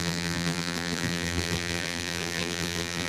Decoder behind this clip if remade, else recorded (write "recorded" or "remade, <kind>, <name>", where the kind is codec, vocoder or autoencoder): remade, vocoder, BigVGAN v2